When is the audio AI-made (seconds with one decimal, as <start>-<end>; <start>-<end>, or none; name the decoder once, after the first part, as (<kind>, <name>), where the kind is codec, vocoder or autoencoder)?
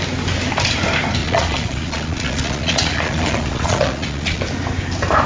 1.2-4.4 (vocoder, Vocos)